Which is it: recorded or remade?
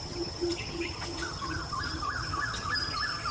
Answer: remade